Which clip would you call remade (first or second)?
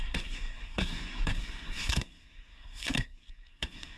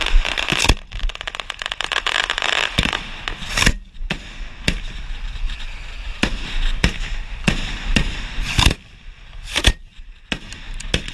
first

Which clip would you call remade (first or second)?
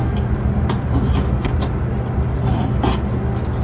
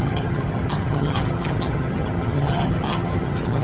second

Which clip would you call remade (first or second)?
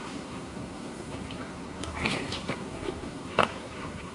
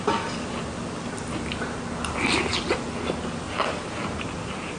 first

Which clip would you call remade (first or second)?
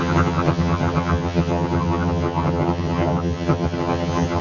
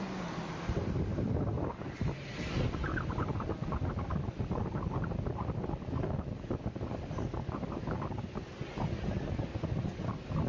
first